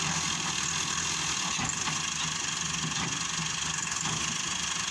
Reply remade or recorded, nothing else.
recorded